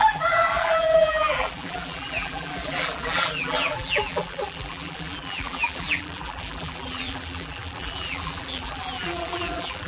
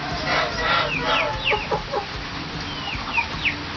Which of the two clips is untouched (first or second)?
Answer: second